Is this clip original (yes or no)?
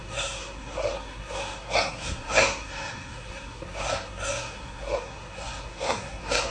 no